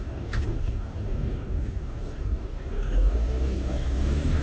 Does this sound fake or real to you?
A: fake